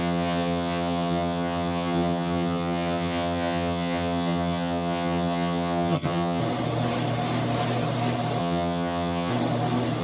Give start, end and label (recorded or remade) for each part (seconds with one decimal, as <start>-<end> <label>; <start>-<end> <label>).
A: 0.0-6.4 remade; 6.4-8.4 recorded; 8.4-9.3 remade; 9.3-10.0 recorded